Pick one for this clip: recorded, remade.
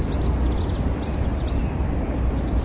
recorded